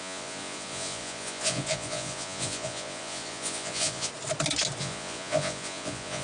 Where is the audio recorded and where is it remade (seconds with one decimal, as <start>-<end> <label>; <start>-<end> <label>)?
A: 0.0-4.1 remade; 4.1-4.8 recorded; 4.8-6.2 remade